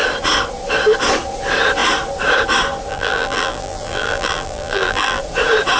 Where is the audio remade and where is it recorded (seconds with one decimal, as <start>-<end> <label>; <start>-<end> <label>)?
0.0-2.9 recorded; 2.9-5.2 remade; 5.2-5.8 recorded